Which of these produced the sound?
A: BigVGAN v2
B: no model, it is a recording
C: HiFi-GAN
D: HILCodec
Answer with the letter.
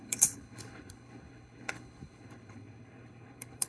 D